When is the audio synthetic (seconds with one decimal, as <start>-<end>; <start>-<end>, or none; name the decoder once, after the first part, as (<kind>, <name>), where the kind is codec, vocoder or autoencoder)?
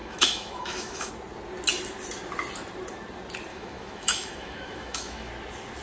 0.0-1.1 (autoencoder, DAC-VAE); 3.5-5.3